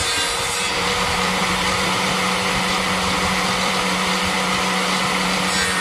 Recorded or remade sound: recorded